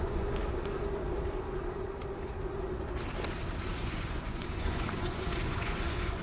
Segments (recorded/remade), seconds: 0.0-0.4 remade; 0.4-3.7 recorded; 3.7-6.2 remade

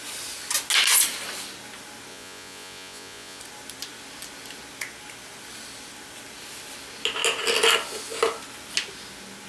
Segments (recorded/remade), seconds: 0.0-2.1 recorded; 2.1-3.4 remade; 3.4-9.5 recorded

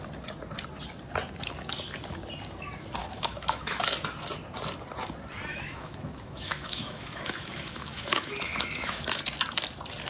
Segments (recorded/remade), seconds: 0.0-3.0 recorded; 3.0-3.8 remade; 3.8-5.5 recorded; 5.5-9.2 remade; 9.2-10.1 recorded

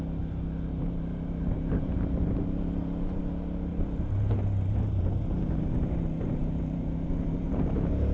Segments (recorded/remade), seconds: 0.0-0.7 recorded; 0.7-3.2 remade; 3.2-3.7 recorded; 3.7-7.5 remade; 7.5-8.1 recorded

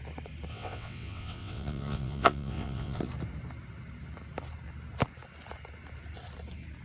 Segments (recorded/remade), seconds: 0.0-0.5 recorded; 0.5-3.0 remade; 3.0-6.8 recorded

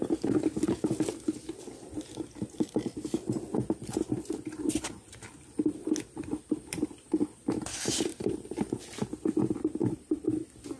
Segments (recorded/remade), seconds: 0.0-8.1 recorded; 8.1-8.8 remade; 8.8-9.8 recorded; 9.8-10.4 remade; 10.4-10.8 recorded

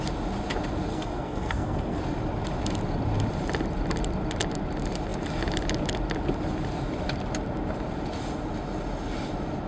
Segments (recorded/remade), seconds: 0.0-0.9 recorded; 0.9-2.0 remade; 2.0-9.7 recorded

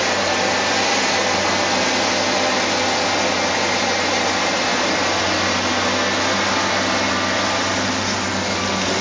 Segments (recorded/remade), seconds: 0.0-9.0 recorded